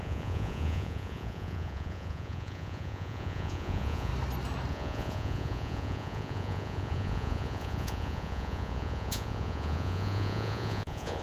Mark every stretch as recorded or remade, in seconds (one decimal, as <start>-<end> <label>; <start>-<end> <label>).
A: 0.0-4.1 remade; 4.1-4.7 recorded; 4.7-11.2 remade